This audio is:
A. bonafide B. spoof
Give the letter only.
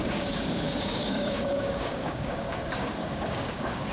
B